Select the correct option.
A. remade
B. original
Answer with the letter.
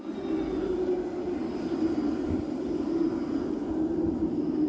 B